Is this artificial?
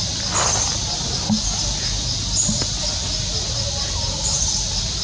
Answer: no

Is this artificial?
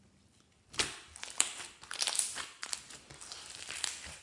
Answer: no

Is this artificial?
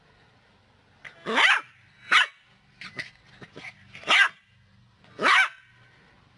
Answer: no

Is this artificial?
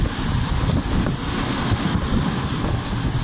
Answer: no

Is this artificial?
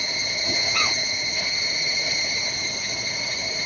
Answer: yes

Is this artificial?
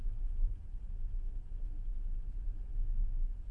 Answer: no